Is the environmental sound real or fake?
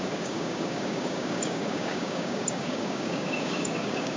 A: fake